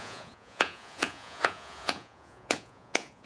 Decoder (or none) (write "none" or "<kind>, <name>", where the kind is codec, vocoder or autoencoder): vocoder, Vocos